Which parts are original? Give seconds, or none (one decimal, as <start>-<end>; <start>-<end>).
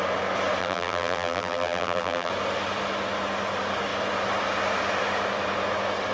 0.0-0.6; 2.3-6.1